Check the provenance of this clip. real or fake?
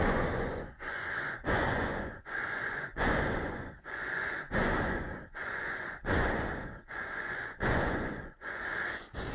fake